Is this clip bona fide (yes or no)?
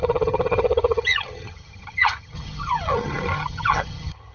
no